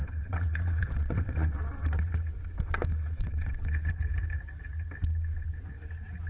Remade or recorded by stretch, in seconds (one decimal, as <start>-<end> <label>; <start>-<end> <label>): 0.0-2.1 remade; 2.1-2.9 recorded; 2.9-3.9 remade; 3.9-6.3 recorded